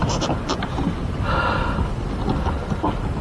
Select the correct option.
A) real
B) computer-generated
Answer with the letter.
A